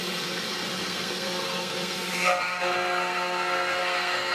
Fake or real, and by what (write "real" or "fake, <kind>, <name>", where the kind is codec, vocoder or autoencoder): fake, codec, SNAC